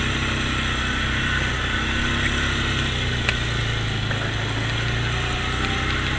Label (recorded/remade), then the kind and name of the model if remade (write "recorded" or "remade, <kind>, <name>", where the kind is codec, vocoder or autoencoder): recorded